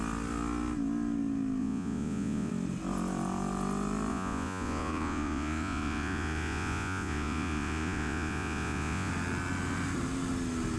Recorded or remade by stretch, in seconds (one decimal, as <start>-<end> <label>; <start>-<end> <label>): 0.0-1.6 recorded; 1.6-2.5 remade; 2.5-4.1 recorded; 4.1-9.1 remade; 9.1-10.8 recorded